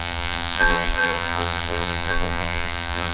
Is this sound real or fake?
fake